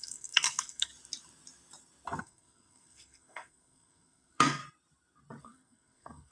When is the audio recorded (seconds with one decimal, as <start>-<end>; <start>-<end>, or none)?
0.9-2.2; 4.6-5.4